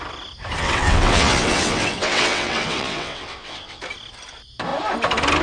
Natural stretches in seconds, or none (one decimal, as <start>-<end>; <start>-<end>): 0.0-0.6; 3.8-5.4

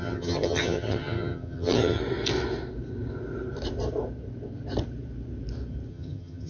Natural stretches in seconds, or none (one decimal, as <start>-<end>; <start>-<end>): 2.0-5.9